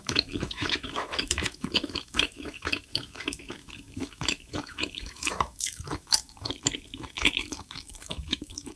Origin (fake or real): fake